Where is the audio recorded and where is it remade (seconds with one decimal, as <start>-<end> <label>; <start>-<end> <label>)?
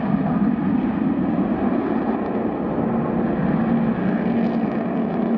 0.0-0.6 recorded; 0.6-2.7 remade; 2.7-5.4 recorded